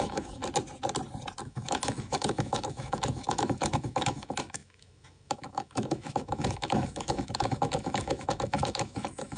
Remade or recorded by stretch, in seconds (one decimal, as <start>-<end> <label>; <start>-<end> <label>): 0.0-0.4 remade; 0.4-1.4 recorded; 1.4-9.4 remade